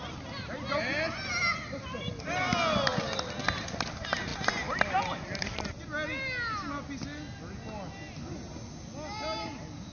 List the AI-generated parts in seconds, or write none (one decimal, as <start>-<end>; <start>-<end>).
none